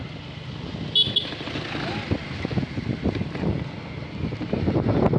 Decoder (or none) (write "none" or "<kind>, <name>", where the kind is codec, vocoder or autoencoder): none